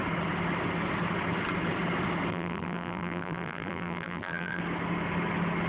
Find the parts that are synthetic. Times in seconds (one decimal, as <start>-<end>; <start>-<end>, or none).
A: 2.3-4.6

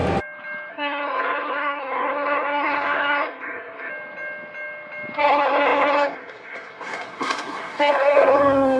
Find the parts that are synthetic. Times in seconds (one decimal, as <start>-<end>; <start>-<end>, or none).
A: 0.7-3.9; 5.2-8.8

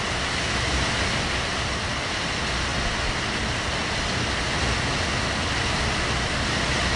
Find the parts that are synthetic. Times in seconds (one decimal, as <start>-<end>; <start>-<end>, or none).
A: none

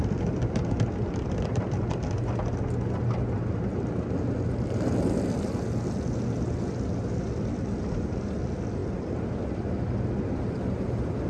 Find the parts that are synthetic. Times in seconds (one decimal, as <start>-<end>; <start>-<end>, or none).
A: none

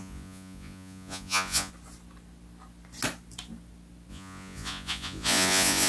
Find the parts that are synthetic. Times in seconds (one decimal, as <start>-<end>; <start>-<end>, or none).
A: 0.0-1.7; 4.1-5.9

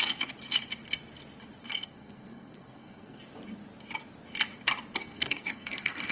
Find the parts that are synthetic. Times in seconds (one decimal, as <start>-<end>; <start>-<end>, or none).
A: 1.7-3.2; 5.0-6.1

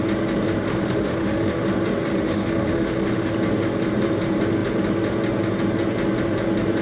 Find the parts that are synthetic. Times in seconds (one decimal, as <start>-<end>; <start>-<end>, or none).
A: 0.7-1.7; 2.1-3.3